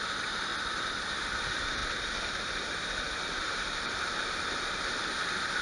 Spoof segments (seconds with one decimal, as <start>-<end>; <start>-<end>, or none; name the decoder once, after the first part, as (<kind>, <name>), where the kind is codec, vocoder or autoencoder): 0.0-0.5 (vocoder, BigVGAN v2); 1.0-5.6